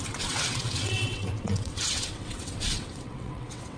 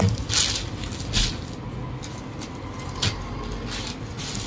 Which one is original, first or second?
second